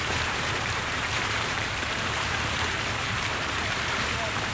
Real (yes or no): no